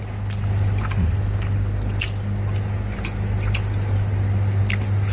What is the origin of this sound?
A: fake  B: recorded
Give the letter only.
B